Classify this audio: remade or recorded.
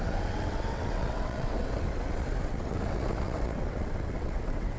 remade